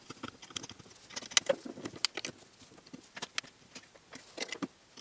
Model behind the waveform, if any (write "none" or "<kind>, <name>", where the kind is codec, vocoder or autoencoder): none